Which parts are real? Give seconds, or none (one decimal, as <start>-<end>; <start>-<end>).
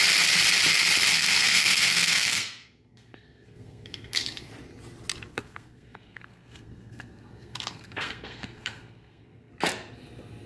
0.0-1.1; 4.5-5.3; 9.5-10.5